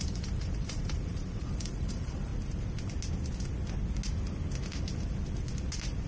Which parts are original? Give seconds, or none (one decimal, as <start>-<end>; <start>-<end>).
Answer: 2.3-6.1